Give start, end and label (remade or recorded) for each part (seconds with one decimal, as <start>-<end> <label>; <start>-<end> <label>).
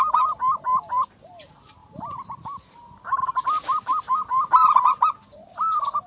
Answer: 0.0-6.1 remade